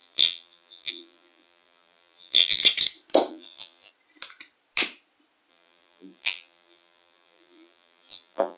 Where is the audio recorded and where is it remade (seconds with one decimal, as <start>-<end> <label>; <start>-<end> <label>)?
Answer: 0.0-2.6 remade; 2.6-3.3 recorded; 3.3-3.9 remade; 3.9-5.5 recorded; 5.5-8.6 remade